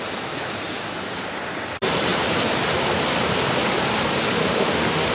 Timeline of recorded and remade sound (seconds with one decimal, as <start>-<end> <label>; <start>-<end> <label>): 0.0-4.4 recorded; 4.4-5.1 remade